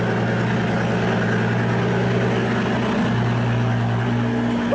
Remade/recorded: recorded